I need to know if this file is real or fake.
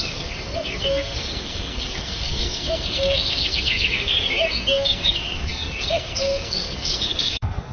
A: fake